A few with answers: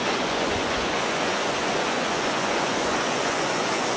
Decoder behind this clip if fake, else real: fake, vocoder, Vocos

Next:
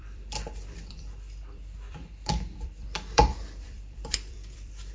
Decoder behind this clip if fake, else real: fake, vocoder, BigVGAN v2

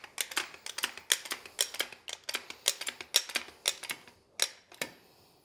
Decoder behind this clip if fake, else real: real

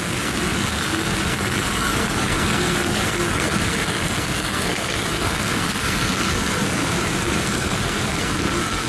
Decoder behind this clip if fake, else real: fake, codec, SNAC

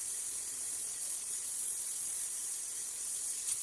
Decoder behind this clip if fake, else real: real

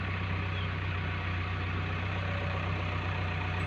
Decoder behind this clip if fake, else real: fake, vocoder, BigVGAN v2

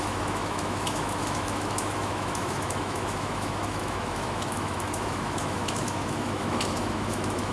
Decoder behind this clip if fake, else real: fake, autoencoder, DAC-VAE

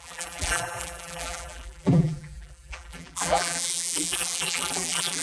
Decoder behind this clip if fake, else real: fake, vocoder, BigVGAN v2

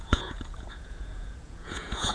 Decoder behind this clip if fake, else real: fake, vocoder, Vocos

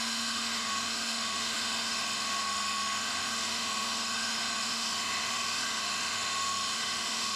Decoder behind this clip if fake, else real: fake, autoencoder, DAC-VAE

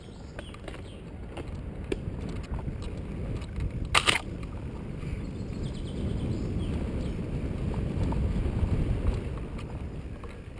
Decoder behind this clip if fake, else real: real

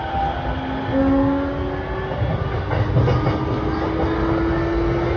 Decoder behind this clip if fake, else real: real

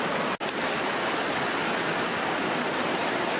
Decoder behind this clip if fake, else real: real